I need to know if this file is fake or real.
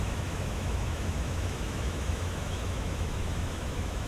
fake